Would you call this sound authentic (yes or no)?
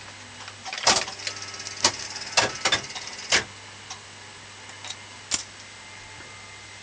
yes